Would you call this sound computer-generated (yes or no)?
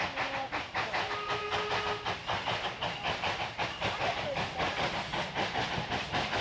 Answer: no